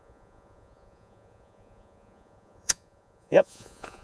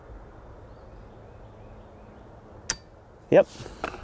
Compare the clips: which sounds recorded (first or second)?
second